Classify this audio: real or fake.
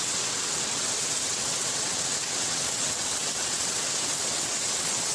fake